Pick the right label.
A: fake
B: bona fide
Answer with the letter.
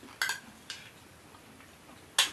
B